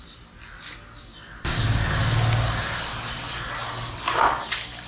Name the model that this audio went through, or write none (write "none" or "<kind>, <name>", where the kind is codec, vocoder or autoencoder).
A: none